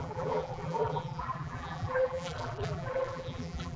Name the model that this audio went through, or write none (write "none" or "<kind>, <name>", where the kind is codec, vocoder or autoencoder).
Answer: vocoder, BigVGAN v2